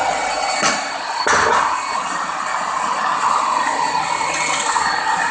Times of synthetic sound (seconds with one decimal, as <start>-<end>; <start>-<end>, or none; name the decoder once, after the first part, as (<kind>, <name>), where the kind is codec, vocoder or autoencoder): none